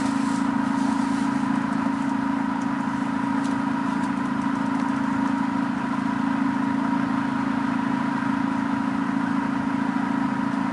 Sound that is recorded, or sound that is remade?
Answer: recorded